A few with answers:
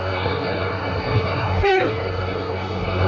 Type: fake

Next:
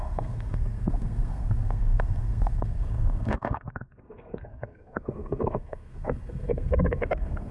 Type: fake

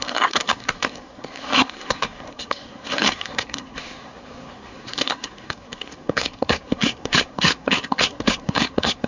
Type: fake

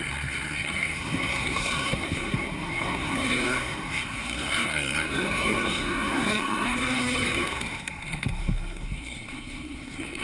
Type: fake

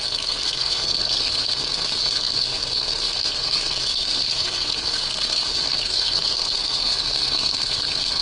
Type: fake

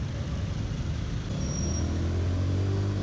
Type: real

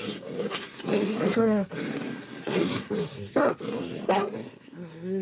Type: fake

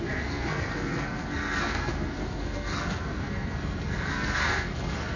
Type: fake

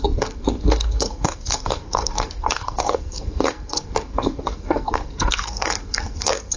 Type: fake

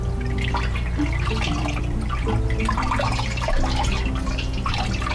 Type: real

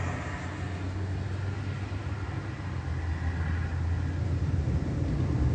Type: real